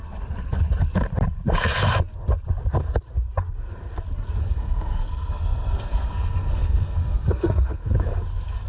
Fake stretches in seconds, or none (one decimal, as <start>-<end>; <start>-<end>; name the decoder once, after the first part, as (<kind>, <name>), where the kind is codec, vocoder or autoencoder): 4.4-7.9 (codec, SNAC)